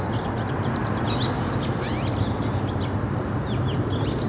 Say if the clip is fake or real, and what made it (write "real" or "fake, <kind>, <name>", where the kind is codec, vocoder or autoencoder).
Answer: real